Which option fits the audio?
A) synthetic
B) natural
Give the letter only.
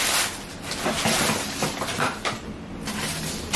B